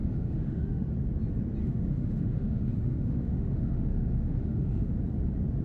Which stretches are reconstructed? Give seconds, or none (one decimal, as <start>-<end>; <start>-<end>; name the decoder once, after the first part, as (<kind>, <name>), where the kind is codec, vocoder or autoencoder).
0.0-0.9 (autoencoder, DAC-VAE); 1.6-5.0